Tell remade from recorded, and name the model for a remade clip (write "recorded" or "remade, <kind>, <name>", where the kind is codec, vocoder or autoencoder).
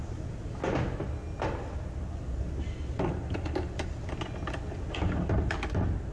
recorded